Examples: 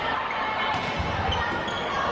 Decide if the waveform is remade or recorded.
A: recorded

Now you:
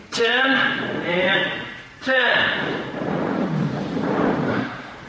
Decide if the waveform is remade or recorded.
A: remade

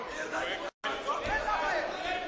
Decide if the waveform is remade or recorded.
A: recorded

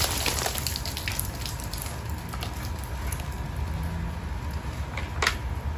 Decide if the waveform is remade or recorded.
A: recorded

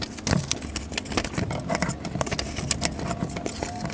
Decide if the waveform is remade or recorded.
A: recorded